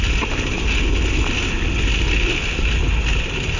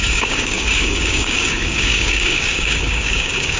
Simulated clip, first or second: second